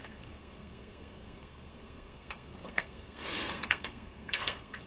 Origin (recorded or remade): remade